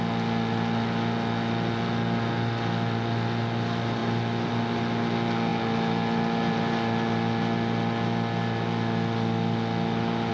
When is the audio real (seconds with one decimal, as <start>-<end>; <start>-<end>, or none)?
0.0-10.3